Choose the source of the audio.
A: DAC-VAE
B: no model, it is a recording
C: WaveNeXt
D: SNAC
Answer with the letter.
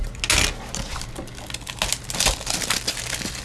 B